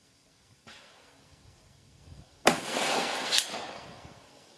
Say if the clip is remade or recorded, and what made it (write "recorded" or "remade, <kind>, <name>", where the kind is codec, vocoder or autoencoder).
remade, codec, SNAC